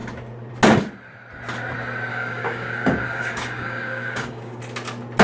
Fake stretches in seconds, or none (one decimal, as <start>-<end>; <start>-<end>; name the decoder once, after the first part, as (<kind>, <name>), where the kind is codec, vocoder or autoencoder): 2.1-4.6 (codec, DAC)